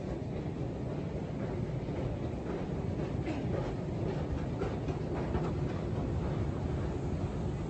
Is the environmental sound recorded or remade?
recorded